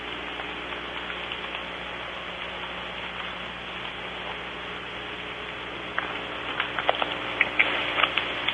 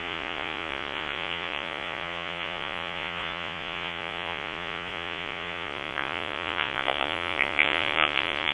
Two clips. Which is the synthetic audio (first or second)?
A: second